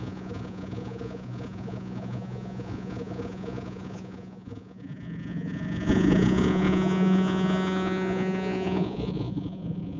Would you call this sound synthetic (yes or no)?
yes